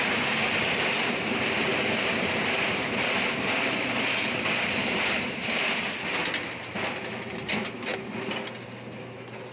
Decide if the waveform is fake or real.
real